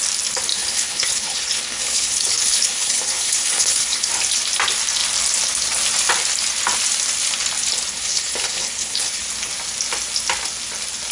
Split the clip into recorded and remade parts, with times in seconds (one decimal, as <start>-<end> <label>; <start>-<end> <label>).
0.0-0.5 recorded; 0.5-4.1 remade; 4.1-7.9 recorded; 7.9-9.2 remade; 9.2-11.1 recorded